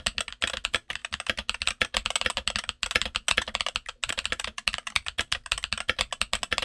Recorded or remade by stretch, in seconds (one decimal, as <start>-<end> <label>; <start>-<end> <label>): 0.0-6.6 recorded